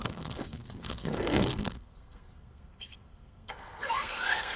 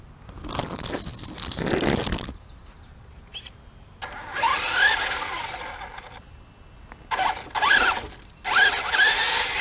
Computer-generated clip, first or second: first